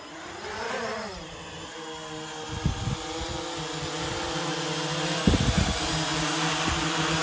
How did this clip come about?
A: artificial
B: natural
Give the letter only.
B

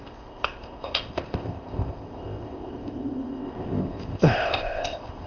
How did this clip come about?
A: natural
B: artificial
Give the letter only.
B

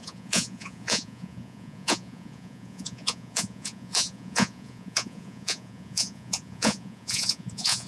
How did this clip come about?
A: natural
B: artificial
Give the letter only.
B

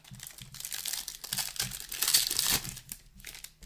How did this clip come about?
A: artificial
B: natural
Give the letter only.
B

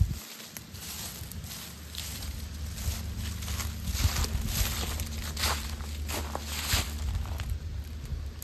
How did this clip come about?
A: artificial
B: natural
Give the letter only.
B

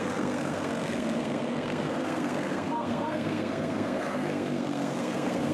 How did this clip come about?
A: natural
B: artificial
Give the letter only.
B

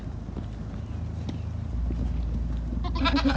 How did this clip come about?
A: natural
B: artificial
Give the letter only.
A